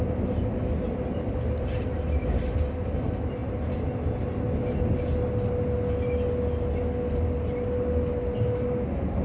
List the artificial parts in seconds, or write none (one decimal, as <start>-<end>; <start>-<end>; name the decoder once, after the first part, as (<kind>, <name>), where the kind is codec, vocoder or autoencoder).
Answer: none